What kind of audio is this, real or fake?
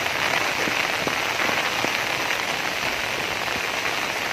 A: real